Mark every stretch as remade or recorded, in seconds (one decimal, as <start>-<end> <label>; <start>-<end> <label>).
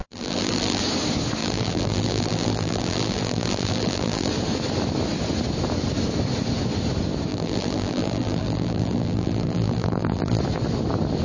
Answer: 0.0-0.8 remade; 0.8-1.4 recorded; 1.4-4.3 remade; 4.3-7.3 recorded; 7.3-10.4 remade; 10.4-11.2 recorded